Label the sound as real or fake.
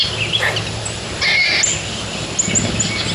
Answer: real